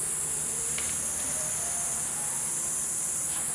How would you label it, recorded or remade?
remade